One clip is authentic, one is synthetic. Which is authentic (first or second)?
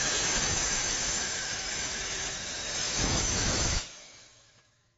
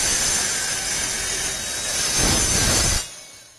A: second